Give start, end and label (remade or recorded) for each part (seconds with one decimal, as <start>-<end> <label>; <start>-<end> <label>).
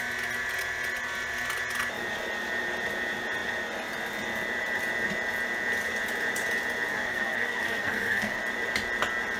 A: 0.0-6.9 recorded; 6.9-8.4 remade; 8.4-9.4 recorded